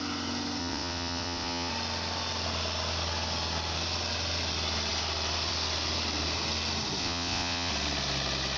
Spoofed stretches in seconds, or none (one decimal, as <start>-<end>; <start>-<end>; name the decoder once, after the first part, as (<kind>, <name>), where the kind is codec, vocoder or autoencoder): 0.6-1.7 (vocoder, WaveNeXt); 7.0-7.7